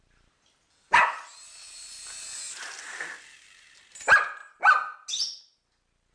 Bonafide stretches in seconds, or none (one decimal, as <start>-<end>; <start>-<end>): 0.0-6.1